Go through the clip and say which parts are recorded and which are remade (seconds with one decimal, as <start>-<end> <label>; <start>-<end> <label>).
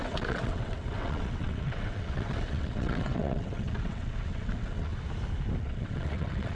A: 0.0-4.9 remade; 4.9-5.6 recorded; 5.6-6.6 remade